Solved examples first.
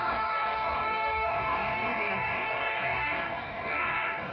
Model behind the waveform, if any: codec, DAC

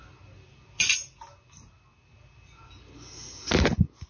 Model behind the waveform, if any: none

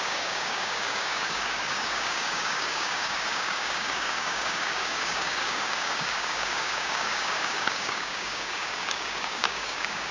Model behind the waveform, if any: codec, DAC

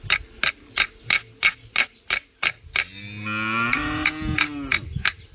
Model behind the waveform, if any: none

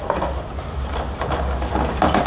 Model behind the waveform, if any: none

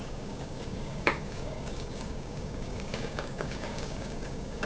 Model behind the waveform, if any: codec, DAC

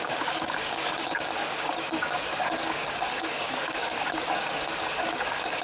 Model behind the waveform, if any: codec, DAC